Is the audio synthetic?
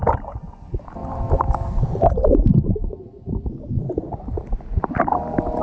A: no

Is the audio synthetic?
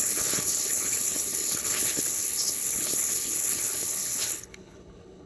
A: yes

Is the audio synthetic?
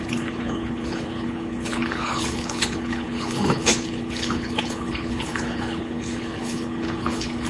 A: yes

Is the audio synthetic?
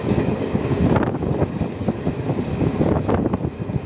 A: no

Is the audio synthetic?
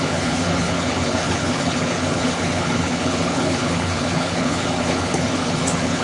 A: yes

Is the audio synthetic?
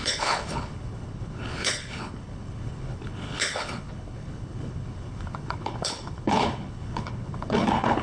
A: yes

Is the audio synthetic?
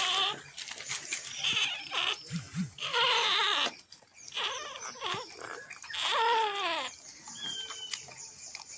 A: no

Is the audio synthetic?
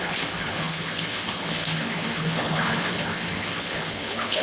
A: yes